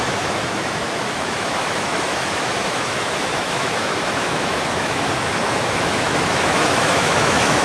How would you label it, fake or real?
fake